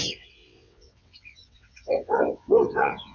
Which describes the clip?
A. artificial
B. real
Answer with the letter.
A